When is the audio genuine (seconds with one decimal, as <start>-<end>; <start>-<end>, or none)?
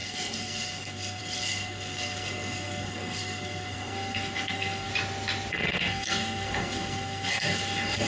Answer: 4.9-5.5